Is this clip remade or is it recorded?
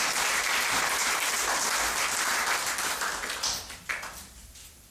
recorded